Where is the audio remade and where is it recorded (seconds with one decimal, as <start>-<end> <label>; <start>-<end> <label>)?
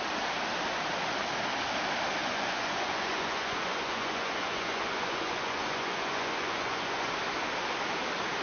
0.0-2.2 recorded; 2.2-7.1 remade; 7.1-8.4 recorded